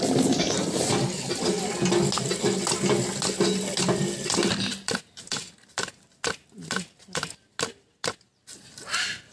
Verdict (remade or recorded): recorded